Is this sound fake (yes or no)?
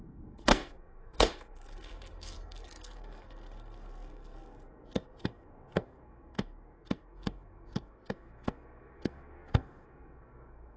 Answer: yes